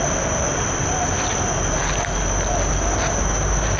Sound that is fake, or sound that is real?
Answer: real